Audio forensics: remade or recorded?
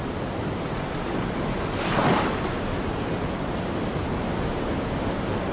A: recorded